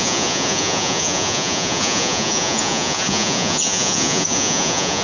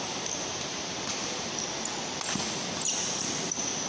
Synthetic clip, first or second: first